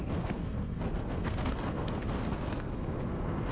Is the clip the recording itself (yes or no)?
no